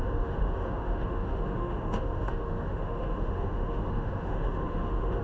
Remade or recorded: remade